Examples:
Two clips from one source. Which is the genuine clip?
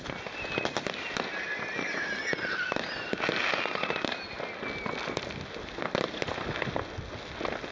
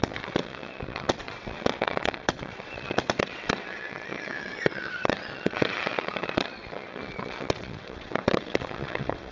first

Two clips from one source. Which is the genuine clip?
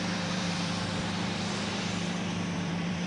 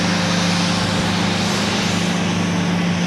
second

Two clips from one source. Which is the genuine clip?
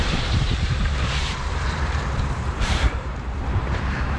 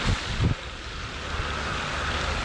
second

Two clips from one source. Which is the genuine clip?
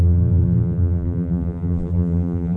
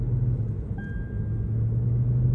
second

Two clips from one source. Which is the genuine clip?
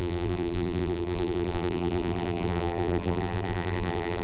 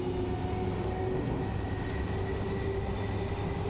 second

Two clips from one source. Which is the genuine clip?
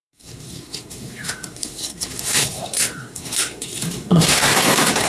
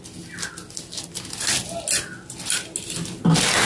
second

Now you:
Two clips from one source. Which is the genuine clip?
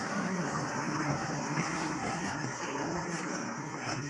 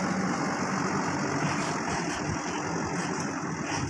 second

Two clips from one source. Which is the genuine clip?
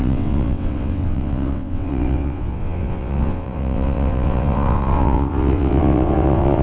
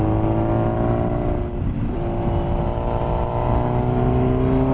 second